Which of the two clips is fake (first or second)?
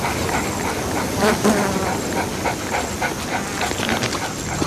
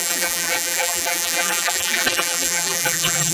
second